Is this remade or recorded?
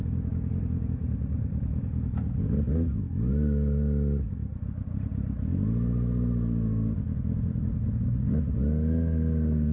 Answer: recorded